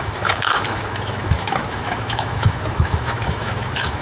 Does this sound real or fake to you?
fake